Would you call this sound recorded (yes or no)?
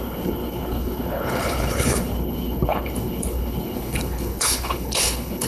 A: no